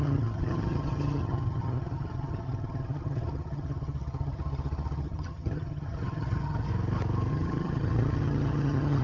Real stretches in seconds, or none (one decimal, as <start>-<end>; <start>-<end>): 6.7-7.3